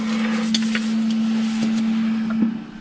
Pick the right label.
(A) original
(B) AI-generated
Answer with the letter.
A